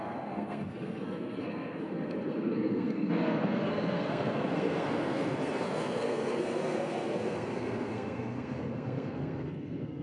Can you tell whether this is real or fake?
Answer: fake